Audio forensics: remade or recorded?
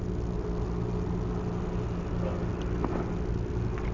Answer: recorded